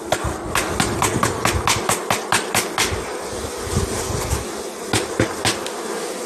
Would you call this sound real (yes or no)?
yes